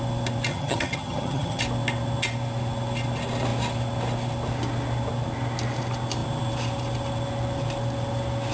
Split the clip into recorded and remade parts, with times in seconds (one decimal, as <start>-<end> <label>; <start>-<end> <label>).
0.0-0.5 recorded; 0.5-1.6 remade; 1.6-8.5 recorded